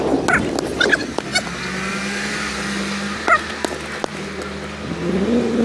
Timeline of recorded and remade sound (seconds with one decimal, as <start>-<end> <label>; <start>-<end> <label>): 0.0-5.6 recorded